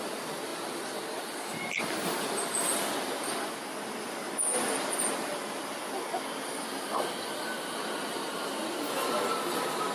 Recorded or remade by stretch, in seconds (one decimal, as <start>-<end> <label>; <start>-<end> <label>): 0.0-0.5 recorded; 0.5-1.2 remade; 1.2-9.9 recorded